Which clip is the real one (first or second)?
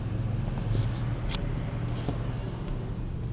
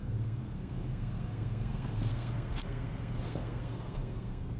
first